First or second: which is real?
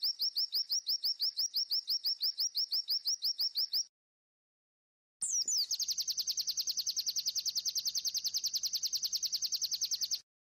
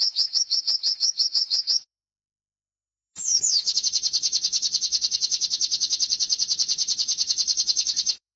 first